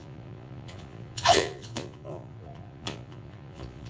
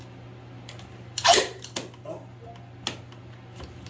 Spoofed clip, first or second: first